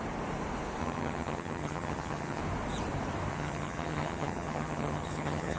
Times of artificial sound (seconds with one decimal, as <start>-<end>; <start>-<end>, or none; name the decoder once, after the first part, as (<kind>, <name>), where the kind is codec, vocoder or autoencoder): 0.8-2.4 (vocoder, HiFi-GAN); 3.3-5.6